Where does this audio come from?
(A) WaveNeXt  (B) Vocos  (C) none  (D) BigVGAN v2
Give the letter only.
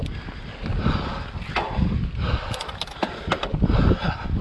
C